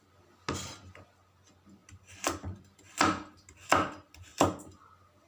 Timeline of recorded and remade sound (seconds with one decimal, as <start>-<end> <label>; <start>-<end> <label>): 0.0-5.3 recorded